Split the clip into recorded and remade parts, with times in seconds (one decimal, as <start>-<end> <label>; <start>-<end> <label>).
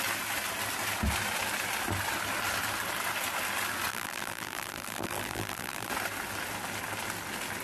0.0-3.9 recorded; 3.9-5.9 remade; 5.9-7.6 recorded